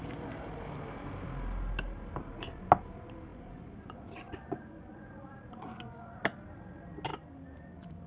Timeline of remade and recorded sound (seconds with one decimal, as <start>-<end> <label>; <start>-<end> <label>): 0.0-3.3 recorded; 3.3-5.1 remade; 5.1-8.1 recorded